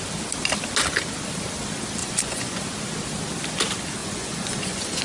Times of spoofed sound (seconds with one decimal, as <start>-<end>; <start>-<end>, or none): 2.0-2.6; 4.0-5.0